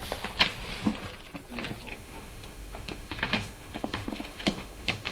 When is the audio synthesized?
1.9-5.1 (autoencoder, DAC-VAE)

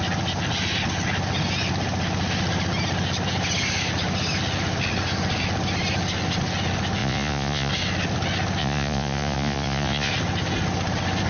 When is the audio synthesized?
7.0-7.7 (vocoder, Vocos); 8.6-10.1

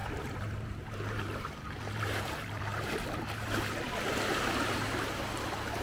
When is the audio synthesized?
0.0-3.5 (vocoder, BigVGAN v2); 4.3-5.1

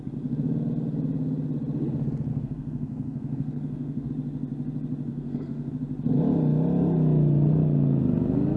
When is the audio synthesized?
2.3-4.1 (codec, SNAC); 5.1-5.7